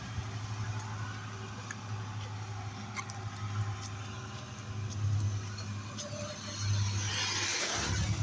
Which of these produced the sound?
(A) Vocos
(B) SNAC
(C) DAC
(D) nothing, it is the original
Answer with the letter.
D